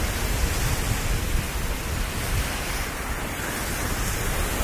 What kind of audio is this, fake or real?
real